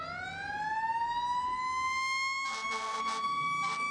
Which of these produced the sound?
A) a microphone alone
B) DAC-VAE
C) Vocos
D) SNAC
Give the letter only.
A